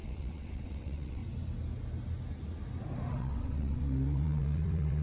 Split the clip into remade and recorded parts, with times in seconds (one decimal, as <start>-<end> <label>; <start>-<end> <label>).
0.0-1.2 remade; 1.2-3.1 recorded; 3.1-5.0 remade